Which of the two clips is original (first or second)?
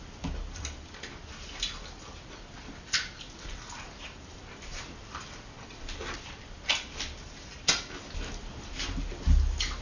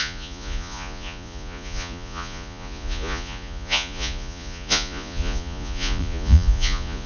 first